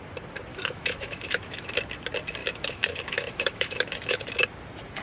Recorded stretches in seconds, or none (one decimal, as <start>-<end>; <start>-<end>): 0.0-0.5; 1.7-2.4; 4.3-5.0